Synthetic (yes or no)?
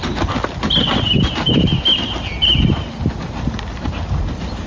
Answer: no